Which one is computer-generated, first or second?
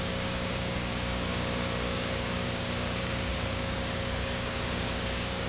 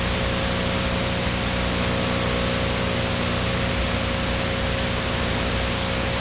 first